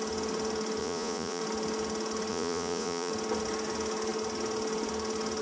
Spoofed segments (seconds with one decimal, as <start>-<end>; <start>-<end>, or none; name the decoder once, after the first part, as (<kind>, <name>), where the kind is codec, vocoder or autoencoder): 0.8-1.4 (vocoder, Vocos); 2.3-3.1